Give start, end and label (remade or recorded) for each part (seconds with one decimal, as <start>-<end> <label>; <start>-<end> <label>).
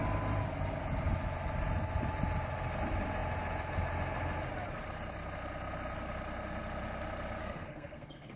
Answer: 0.0-7.4 recorded; 7.4-8.4 remade